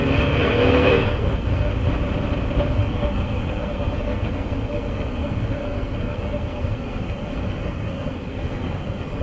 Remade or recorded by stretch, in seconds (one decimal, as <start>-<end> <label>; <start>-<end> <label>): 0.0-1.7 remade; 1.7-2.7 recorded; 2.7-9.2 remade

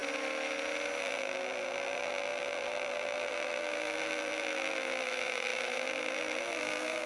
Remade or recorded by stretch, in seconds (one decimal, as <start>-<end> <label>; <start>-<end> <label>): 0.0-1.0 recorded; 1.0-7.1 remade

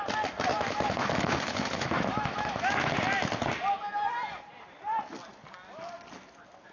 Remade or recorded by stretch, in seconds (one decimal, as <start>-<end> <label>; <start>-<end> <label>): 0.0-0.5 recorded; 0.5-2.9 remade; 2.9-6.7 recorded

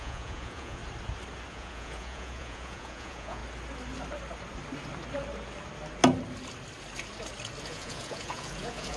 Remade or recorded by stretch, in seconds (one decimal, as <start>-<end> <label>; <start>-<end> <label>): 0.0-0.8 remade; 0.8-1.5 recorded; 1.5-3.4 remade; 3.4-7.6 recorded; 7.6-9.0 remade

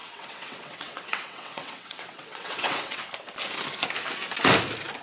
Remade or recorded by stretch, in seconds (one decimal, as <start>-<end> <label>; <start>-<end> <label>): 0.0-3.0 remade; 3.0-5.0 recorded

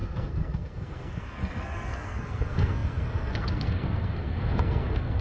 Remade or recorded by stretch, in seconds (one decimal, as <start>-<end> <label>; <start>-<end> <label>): 0.0-5.2 remade

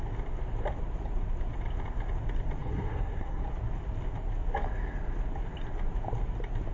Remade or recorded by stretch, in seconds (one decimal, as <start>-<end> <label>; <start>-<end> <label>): 0.0-2.6 recorded; 2.6-3.4 remade; 3.4-6.7 recorded